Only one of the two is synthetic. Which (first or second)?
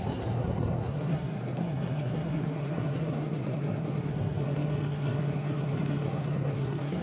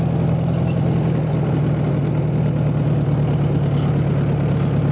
first